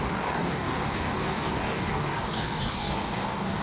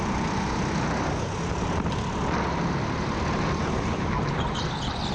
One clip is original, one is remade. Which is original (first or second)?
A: second